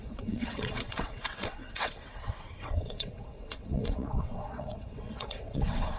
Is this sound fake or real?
fake